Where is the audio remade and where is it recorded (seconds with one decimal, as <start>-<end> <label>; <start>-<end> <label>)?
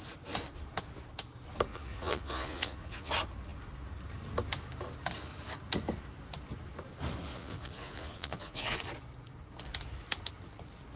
0.0-1.7 recorded; 1.7-3.1 remade; 3.1-7.3 recorded; 7.3-8.9 remade; 8.9-11.0 recorded